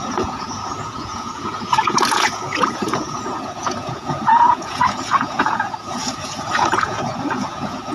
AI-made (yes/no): yes